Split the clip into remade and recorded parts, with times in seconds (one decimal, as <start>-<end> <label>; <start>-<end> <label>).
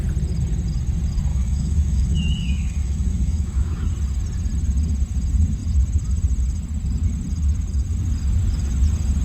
0.0-1.3 recorded; 1.3-3.9 remade; 3.9-9.2 recorded